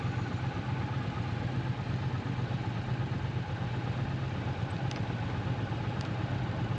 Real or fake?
real